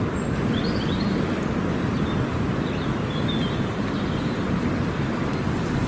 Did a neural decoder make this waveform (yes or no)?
no